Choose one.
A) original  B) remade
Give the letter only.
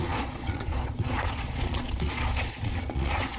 B